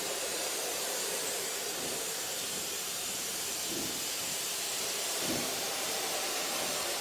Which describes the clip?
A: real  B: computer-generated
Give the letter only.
B